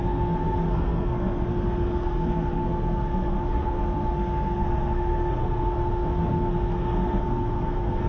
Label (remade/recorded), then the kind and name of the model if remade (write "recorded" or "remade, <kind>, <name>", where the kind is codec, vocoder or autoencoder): remade, codec, SNAC